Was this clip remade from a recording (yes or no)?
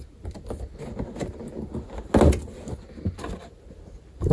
no